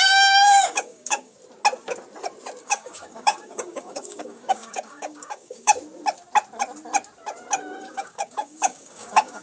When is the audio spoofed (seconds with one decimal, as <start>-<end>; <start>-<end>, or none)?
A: 0.0-1.4; 2.6-5.7; 7.8-9.4